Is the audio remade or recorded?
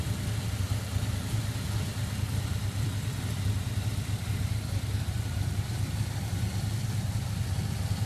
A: remade